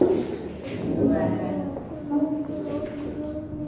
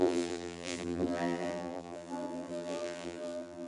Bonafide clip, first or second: first